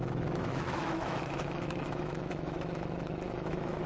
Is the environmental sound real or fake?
fake